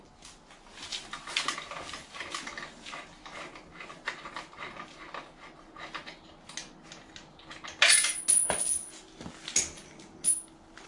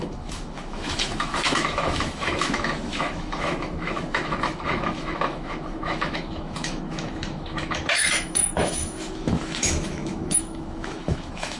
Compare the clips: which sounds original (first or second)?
first